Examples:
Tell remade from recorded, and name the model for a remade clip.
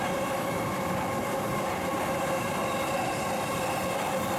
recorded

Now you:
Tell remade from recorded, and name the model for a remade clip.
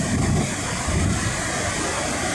recorded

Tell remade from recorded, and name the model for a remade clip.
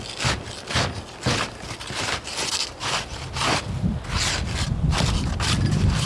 recorded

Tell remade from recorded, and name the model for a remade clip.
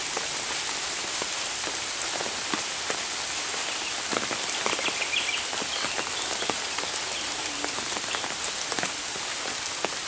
recorded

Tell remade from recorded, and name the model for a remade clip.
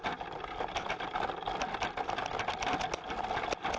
recorded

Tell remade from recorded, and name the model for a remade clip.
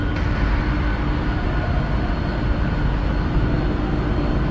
recorded